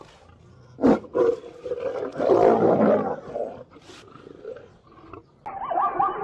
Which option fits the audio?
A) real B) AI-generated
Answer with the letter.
A